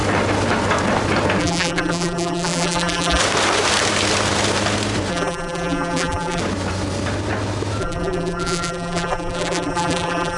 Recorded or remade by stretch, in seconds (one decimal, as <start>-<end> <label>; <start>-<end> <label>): 0.0-1.4 recorded; 1.4-3.2 remade; 3.2-5.1 recorded; 5.1-6.4 remade; 6.4-7.8 recorded; 7.8-10.4 remade